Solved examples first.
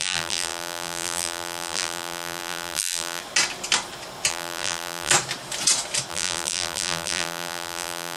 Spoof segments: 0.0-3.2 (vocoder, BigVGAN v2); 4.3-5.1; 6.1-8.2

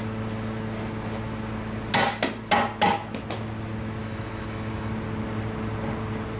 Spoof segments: 4.0-4.9 (autoencoder, DAC-VAE)